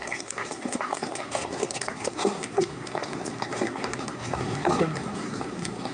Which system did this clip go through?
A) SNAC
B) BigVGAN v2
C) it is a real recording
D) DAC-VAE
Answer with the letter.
A